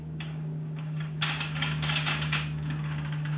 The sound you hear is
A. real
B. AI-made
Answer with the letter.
B